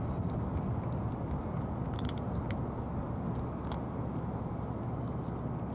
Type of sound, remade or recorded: recorded